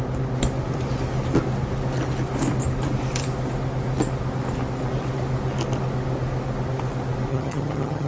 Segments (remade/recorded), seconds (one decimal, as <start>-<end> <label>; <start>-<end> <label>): 0.0-7.3 recorded; 7.3-8.1 remade